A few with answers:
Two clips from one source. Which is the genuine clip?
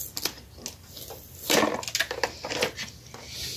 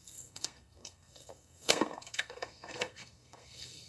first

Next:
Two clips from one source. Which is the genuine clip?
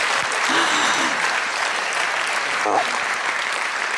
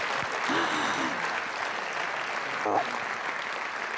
second